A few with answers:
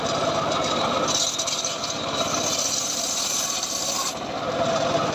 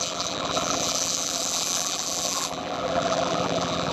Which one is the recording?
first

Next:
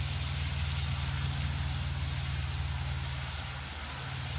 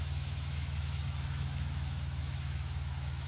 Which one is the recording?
first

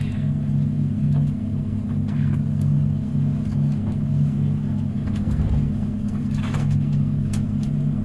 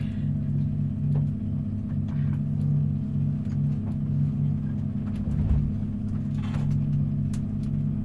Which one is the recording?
second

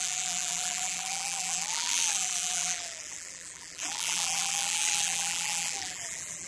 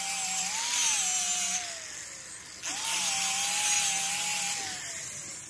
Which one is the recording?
second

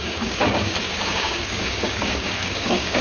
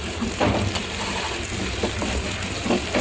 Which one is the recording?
second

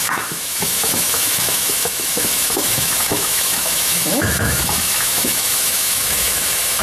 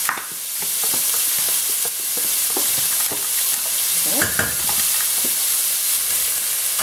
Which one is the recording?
second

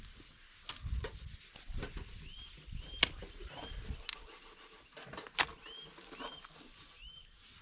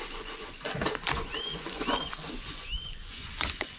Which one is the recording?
first